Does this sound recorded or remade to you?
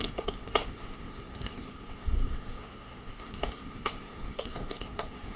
remade